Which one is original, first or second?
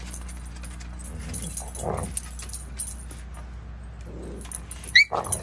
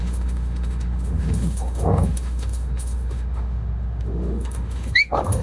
first